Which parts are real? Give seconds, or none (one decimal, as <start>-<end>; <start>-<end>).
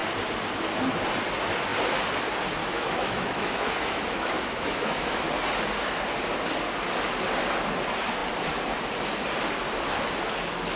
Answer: 0.0-2.6; 5.3-10.8